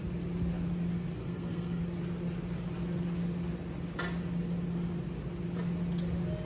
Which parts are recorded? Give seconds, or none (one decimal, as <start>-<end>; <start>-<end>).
0.0-1.2; 1.8-6.5